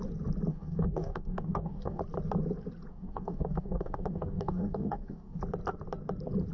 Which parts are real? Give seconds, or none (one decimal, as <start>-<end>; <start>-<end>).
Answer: 0.0-0.5; 2.0-2.9; 5.4-6.5